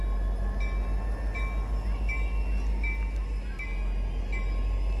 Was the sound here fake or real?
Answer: real